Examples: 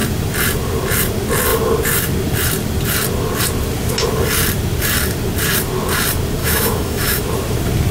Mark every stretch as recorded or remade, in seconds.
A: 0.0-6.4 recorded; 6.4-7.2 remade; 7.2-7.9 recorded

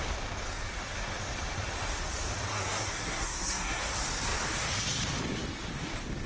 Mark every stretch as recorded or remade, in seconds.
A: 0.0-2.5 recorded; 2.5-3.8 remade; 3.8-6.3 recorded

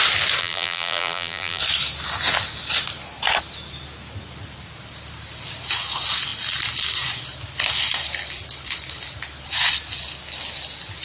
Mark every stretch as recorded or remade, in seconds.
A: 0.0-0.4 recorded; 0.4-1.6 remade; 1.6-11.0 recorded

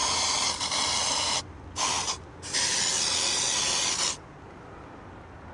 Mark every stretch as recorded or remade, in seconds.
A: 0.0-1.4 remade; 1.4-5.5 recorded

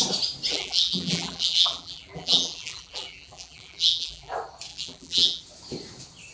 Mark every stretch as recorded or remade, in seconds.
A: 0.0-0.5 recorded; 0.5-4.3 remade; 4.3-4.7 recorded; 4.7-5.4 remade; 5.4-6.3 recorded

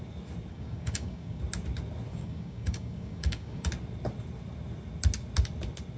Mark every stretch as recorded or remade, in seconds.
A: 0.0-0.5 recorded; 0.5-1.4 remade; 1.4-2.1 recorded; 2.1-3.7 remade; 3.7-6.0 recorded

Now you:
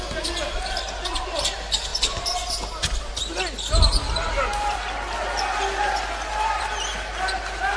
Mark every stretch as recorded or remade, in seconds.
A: 0.0-7.8 recorded